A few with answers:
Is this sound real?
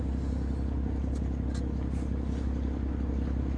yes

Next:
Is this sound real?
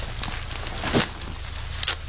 yes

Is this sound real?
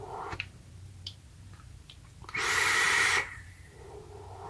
no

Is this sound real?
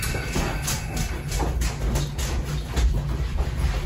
yes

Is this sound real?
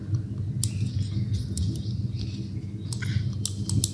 yes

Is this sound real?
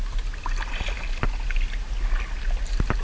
yes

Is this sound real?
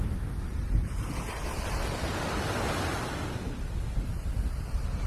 yes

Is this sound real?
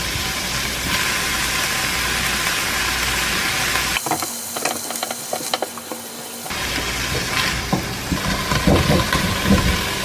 yes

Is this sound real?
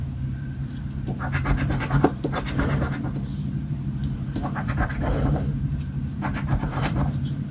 no